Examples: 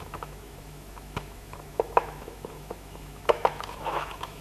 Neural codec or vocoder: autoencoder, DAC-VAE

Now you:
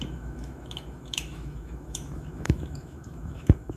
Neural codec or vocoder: autoencoder, DAC-VAE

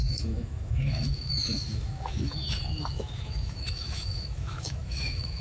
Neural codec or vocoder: autoencoder, DAC-VAE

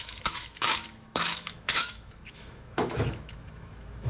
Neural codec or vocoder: autoencoder, DAC-VAE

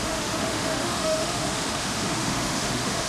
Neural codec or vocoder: autoencoder, DAC-VAE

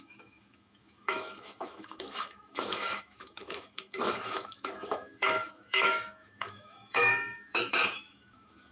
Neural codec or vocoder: autoencoder, DAC-VAE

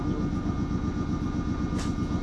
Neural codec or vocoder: none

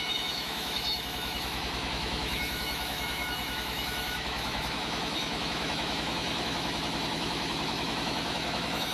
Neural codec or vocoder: autoencoder, DAC-VAE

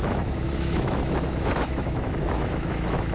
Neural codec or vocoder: autoencoder, DAC-VAE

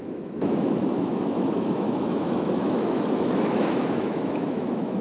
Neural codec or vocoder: autoencoder, DAC-VAE